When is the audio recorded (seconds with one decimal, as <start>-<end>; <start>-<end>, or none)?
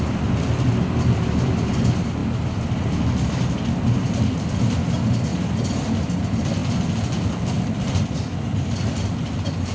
2.2-4.1; 5.3-6.0